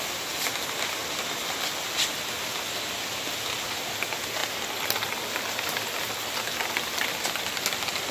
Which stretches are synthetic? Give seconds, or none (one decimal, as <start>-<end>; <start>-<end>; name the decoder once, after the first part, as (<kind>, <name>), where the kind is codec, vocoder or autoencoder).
none